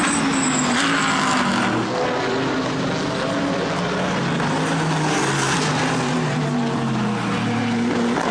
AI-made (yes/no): no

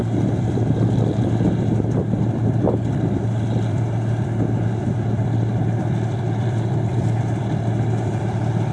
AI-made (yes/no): yes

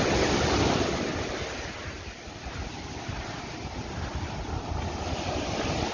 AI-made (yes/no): no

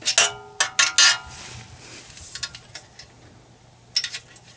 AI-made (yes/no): no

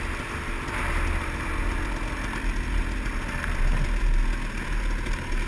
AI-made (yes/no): no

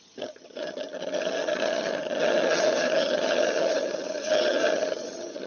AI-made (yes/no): yes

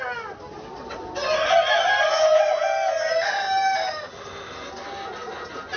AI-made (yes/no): no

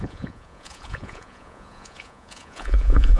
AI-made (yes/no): yes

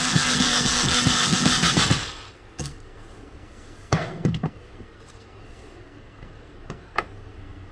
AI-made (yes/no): yes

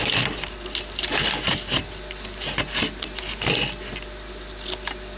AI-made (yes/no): no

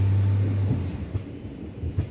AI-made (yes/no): no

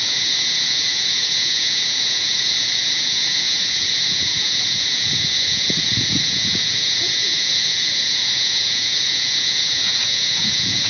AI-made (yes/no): yes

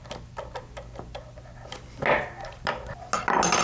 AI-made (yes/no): no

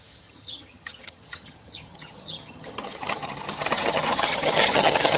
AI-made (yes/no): yes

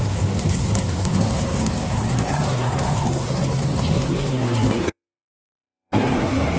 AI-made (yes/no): yes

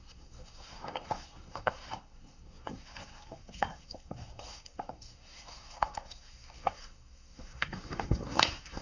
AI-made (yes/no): yes